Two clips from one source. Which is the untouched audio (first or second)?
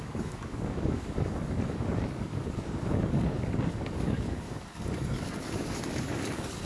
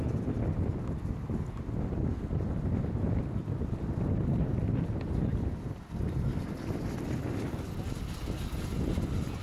second